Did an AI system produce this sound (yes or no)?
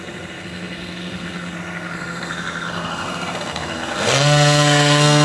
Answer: yes